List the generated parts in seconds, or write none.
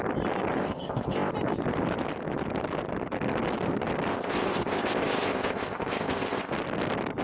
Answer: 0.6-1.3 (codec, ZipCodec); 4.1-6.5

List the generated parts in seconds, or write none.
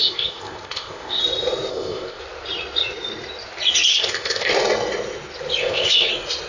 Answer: 0.0-1.2 (codec, ZipCodec); 1.7-2.2; 3.9-4.5; 5.6-6.1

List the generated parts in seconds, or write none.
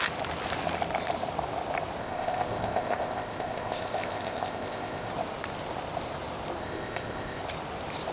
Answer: 2.0-5.1 (codec, ZipCodec); 6.6-7.4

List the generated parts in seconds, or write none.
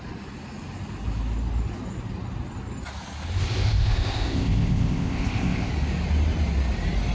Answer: 3.4-5.7 (codec, ZipCodec)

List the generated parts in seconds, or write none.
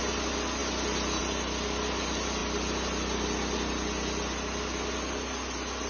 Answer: none